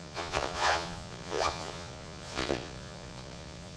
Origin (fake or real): fake